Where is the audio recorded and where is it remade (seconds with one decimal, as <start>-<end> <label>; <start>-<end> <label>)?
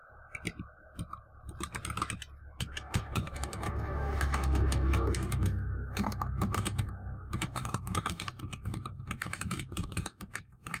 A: 0.0-2.6 recorded; 2.6-10.8 remade